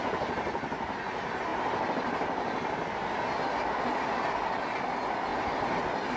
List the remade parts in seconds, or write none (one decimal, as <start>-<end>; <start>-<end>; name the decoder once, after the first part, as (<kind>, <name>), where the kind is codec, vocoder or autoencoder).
none